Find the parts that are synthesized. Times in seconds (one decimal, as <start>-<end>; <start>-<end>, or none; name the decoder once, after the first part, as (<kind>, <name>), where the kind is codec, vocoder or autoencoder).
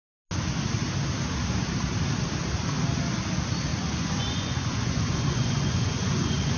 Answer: 3.7-6.6 (vocoder, Vocos)